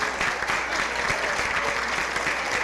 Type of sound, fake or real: real